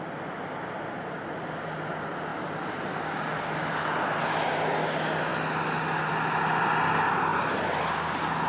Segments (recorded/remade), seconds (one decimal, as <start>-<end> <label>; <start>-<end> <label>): 0.0-8.5 recorded

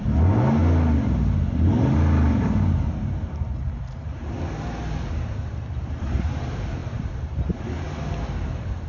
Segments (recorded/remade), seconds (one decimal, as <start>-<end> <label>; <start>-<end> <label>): 0.0-8.9 recorded

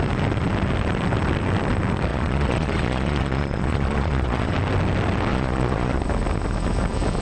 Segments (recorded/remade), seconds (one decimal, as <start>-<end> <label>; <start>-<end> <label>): 0.0-2.1 recorded; 2.1-4.5 remade; 4.5-5.3 recorded; 5.3-6.0 remade; 6.0-7.2 recorded

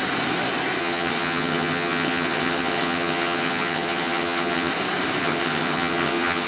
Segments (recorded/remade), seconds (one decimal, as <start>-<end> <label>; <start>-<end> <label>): 0.0-0.8 recorded; 0.8-4.7 remade; 4.7-5.2 recorded; 5.2-6.5 remade

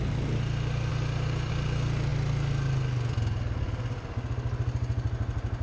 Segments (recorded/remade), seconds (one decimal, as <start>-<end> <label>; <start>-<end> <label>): 0.0-0.9 recorded; 0.9-1.5 remade; 1.5-5.6 recorded

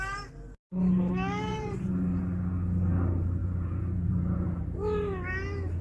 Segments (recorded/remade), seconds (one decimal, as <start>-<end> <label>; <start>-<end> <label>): 0.0-1.5 recorded; 1.5-2.2 remade; 2.2-3.4 recorded; 3.4-4.6 remade; 4.6-5.8 recorded

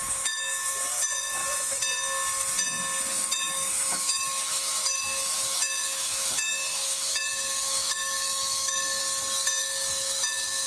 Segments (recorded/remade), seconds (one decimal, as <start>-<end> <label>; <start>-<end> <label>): 0.0-1.4 remade; 1.4-3.3 recorded; 3.3-9.0 remade; 9.0-9.6 recorded; 9.6-10.7 remade